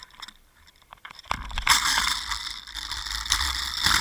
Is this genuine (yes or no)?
no